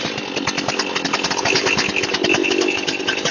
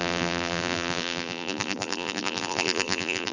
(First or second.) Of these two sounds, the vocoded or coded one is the second